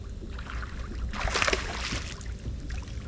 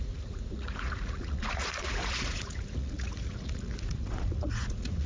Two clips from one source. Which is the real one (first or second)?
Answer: first